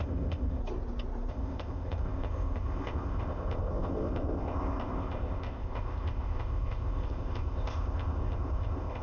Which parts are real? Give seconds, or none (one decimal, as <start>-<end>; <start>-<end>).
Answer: 0.6-1.3